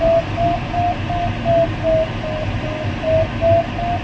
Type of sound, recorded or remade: recorded